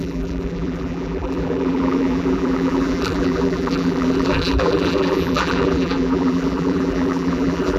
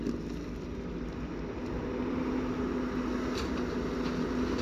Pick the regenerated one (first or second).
first